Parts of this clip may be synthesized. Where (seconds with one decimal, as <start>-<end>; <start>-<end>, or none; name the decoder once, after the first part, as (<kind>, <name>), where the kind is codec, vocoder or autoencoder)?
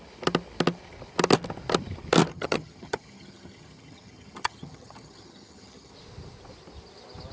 2.3-5.9 (vocoder, HiFi-GAN)